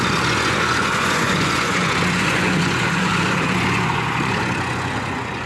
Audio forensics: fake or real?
fake